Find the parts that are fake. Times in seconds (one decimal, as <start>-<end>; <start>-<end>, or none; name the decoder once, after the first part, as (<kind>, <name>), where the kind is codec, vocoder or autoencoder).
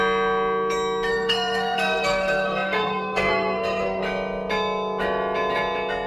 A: 1.1-4.0 (codec, SNAC)